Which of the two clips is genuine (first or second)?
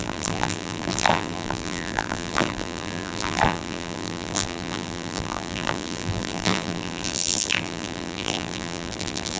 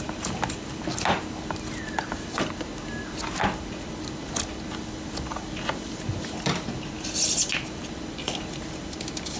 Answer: second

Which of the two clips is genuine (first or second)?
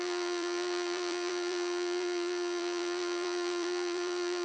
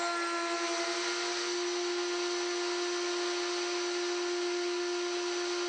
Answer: second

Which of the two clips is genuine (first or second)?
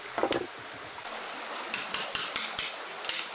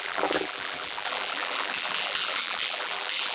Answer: first